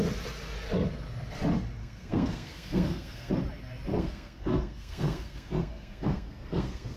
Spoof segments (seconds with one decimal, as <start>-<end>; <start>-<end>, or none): 1.8-3.3; 3.9-7.0

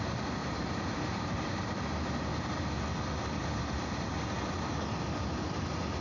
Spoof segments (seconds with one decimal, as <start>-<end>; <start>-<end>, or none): 0.4-1.7